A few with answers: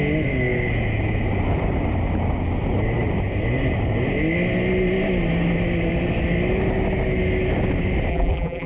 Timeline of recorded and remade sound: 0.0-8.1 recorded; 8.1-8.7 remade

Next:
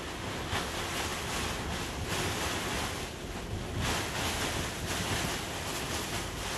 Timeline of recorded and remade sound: 0.0-6.6 recorded

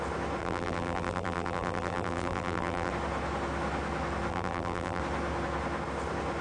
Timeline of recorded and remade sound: 0.0-0.4 recorded; 0.4-2.9 remade; 2.9-4.3 recorded; 4.3-5.0 remade; 5.0-6.4 recorded

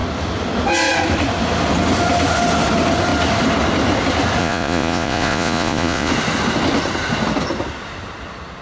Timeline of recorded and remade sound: 0.0-4.4 recorded; 4.4-6.1 remade; 6.1-8.6 recorded

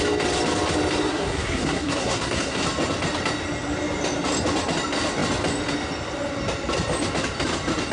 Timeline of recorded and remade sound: 0.0-1.1 recorded; 1.1-2.6 remade; 2.6-7.9 recorded

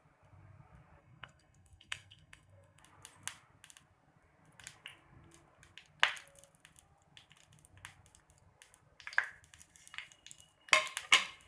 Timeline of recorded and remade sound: 0.0-1.0 recorded; 1.0-2.8 remade; 2.8-11.5 recorded

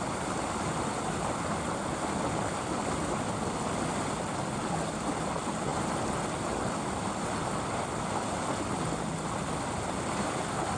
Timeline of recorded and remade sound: 0.0-10.8 recorded